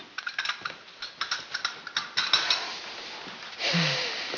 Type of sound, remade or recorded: recorded